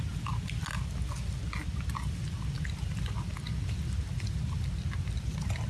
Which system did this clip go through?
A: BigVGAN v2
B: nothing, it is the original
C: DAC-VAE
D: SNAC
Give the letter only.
B